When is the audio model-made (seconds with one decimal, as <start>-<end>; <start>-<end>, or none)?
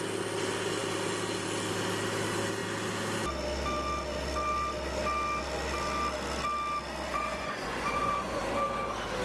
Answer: 7.1-8.4